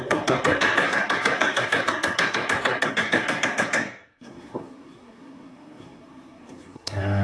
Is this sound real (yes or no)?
no